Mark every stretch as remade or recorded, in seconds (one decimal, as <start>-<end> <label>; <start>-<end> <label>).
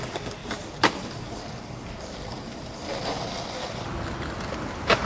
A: 0.0-0.4 recorded; 0.4-1.4 remade; 1.4-2.3 recorded; 2.3-3.9 remade; 3.9-5.0 recorded